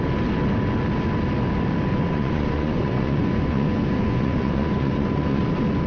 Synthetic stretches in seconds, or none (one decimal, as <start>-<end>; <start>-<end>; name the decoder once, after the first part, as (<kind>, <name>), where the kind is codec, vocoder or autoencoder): 1.9-5.4 (vocoder, Vocos)